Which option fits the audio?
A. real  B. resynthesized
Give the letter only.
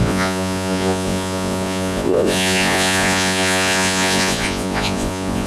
B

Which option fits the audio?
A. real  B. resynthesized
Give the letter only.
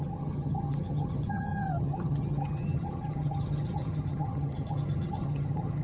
B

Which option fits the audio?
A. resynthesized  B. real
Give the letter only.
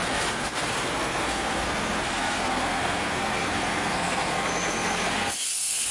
A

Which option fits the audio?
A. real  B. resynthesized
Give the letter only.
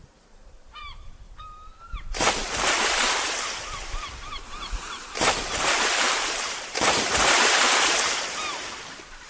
B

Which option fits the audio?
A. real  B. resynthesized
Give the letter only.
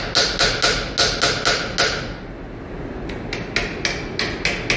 A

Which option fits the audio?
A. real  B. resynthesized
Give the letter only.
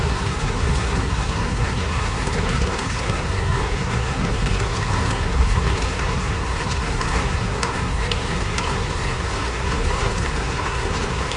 B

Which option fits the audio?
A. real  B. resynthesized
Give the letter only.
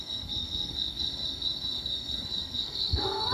B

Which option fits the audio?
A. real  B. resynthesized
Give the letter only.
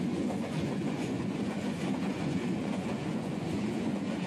B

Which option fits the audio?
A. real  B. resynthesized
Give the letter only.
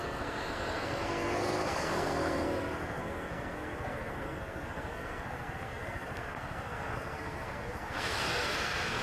B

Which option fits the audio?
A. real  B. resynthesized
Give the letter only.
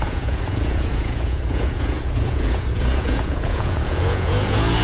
B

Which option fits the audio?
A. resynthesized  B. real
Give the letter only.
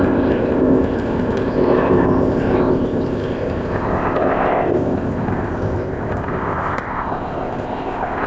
A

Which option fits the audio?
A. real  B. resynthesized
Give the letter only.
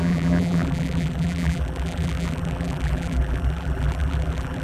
B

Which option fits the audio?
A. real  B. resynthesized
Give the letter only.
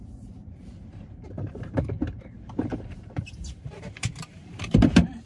B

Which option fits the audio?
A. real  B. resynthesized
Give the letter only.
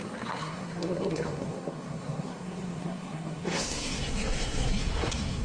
B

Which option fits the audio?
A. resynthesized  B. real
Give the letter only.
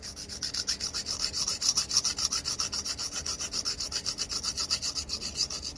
B